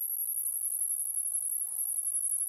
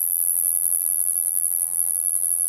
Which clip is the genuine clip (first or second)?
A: first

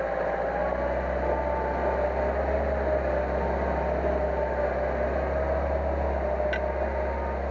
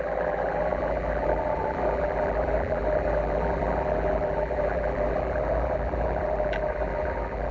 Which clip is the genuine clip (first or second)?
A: first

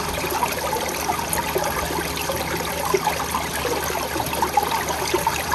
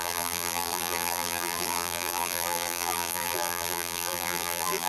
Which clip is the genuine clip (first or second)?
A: first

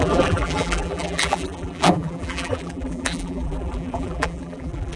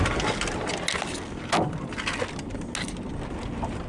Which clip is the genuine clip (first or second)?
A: second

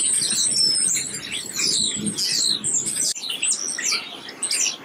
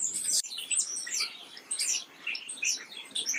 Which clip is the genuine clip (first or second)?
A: first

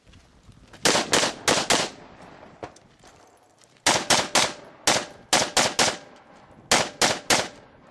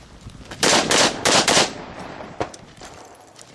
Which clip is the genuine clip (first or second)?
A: first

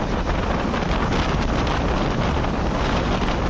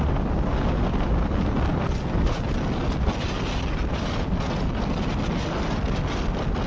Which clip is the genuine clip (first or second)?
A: second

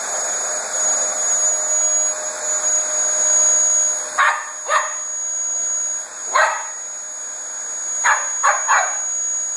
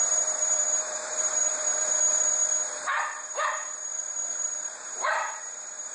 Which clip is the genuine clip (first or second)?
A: first